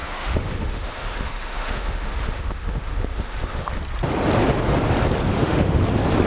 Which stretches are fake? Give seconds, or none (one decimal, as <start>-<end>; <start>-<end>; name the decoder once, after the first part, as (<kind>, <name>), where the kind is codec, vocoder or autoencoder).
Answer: 0.0-3.8 (autoencoder, DAC-VAE); 5.3-5.8